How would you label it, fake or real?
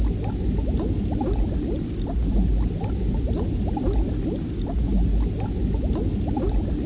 real